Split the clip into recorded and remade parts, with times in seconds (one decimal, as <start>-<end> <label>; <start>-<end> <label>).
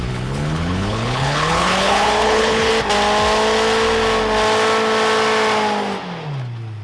0.0-2.7 remade; 2.7-6.8 recorded